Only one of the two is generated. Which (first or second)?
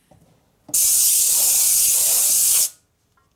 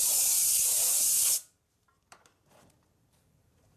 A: second